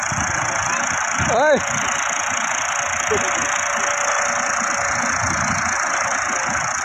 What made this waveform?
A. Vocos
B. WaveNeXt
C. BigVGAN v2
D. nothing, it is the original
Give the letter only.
D